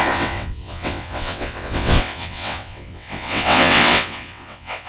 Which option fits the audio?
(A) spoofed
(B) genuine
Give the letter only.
A